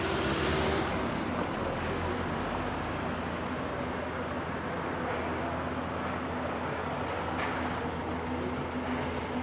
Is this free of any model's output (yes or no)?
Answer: yes